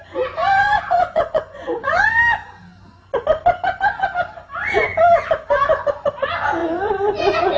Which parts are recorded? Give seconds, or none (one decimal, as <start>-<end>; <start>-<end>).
0.0-0.4; 2.2-6.6